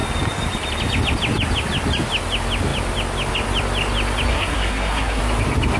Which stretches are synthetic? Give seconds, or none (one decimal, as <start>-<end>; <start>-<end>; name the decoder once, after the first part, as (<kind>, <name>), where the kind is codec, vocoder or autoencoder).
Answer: 4.3-5.2 (codec, SNAC)